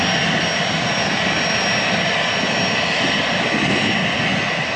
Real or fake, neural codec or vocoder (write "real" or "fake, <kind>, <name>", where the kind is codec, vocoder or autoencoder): real